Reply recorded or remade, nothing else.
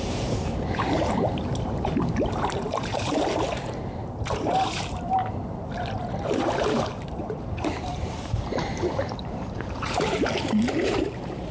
remade